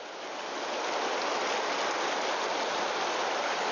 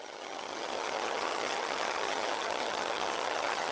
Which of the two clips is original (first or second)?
first